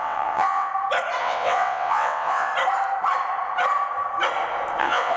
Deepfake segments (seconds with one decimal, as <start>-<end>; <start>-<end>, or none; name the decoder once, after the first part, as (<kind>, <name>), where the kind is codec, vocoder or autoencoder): 0.0-0.7 (vocoder, WaveNeXt); 1.2-2.5; 4.8-5.2